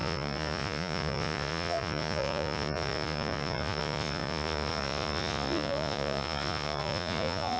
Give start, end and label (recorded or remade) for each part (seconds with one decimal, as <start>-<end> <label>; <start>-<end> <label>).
0.0-7.6 remade